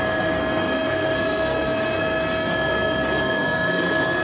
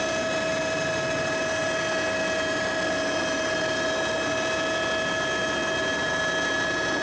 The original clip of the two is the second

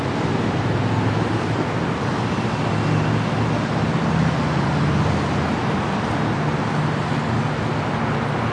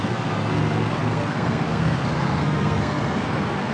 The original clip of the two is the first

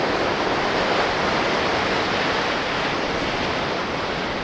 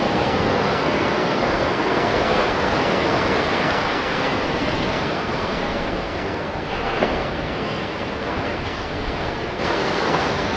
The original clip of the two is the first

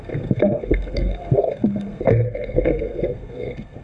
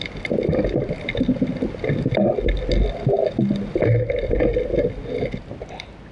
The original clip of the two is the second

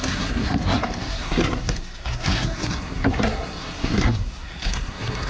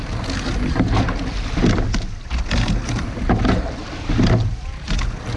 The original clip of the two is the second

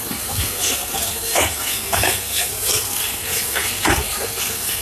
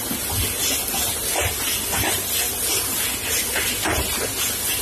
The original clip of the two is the second